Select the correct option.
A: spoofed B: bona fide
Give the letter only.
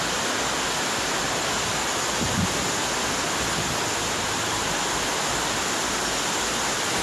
B